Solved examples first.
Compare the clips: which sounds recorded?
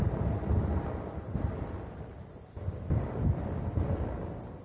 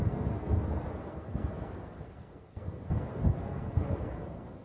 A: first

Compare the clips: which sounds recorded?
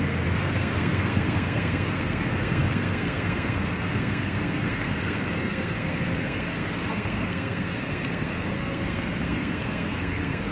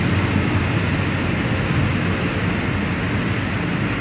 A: second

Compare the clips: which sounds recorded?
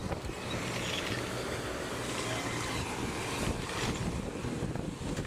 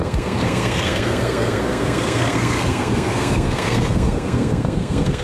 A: first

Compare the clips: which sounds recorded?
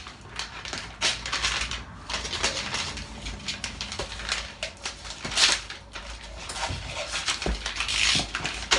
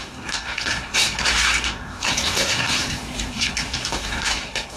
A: first